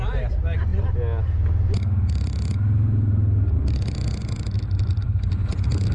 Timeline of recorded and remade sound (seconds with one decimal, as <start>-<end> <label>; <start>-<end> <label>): 0.0-5.9 recorded